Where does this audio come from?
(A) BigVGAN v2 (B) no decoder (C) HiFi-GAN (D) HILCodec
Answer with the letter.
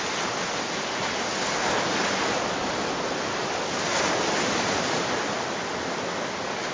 B